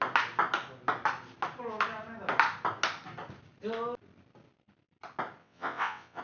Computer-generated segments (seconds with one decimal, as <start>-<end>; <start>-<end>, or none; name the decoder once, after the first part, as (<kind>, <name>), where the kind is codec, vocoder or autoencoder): 5.4-6.2 (vocoder, WaveNeXt)